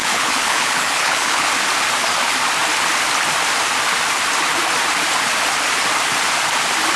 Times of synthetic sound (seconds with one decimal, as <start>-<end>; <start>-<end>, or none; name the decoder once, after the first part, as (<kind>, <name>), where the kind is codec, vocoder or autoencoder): 0.0-1.5 (codec, HILCodec)